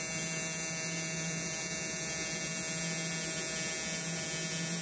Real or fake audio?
real